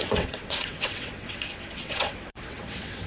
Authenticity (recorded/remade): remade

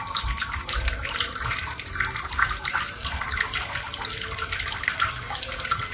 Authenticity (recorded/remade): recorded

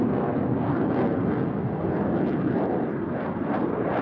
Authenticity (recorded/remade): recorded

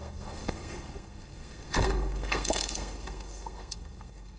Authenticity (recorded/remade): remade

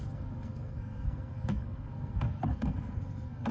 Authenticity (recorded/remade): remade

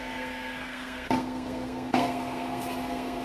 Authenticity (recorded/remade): remade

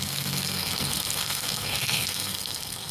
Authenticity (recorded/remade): remade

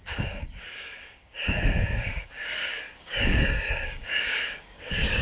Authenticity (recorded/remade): remade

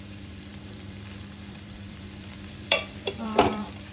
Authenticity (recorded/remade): remade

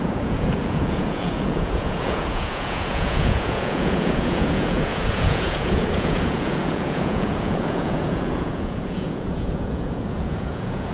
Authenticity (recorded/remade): remade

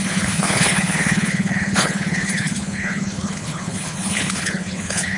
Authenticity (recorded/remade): remade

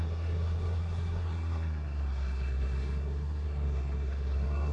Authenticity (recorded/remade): remade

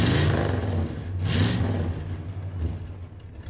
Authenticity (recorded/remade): recorded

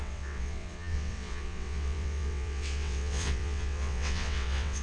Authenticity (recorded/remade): remade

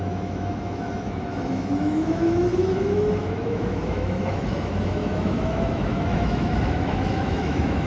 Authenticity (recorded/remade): remade